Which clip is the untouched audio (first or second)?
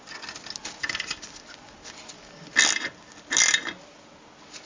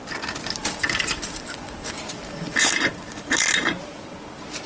first